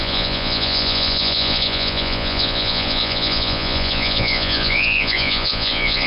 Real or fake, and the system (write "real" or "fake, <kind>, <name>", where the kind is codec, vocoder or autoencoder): fake, vocoder, Vocos